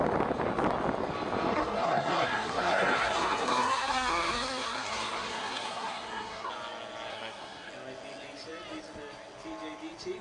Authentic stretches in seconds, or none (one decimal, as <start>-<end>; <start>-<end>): 0.0-1.5; 6.5-7.1; 7.7-10.2